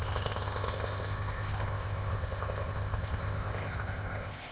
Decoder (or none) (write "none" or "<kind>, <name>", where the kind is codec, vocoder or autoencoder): codec, ZipCodec